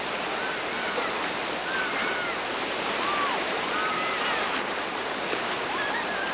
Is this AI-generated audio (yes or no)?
yes